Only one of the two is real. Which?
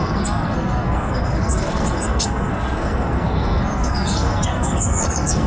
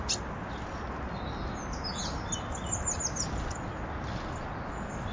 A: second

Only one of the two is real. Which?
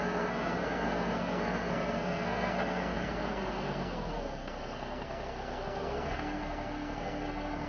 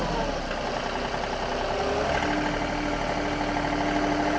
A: second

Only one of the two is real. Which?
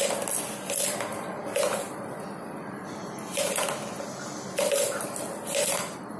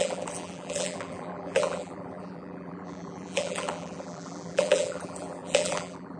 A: first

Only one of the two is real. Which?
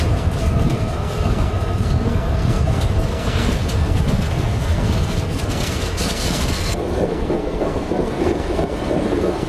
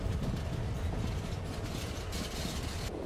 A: second